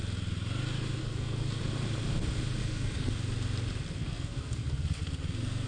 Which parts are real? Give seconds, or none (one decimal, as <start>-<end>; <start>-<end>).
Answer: 0.0-1.0; 1.6-2.6; 3.1-4.0